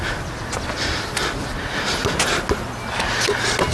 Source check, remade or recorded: recorded